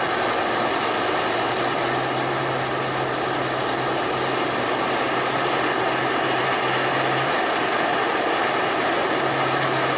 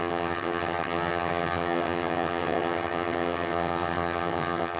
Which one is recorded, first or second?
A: first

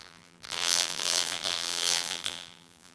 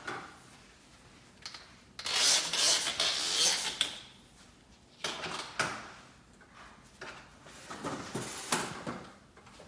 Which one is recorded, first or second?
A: second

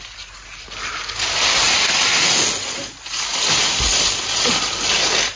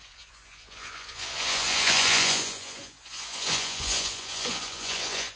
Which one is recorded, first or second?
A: first